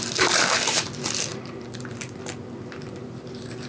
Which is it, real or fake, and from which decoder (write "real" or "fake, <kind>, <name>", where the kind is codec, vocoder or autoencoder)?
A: fake, vocoder, BigVGAN v2